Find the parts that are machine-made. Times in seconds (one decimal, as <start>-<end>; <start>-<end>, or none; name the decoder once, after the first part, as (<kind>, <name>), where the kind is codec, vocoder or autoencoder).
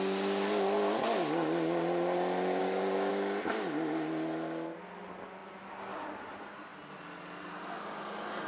2.6-3.1 (codec, DAC)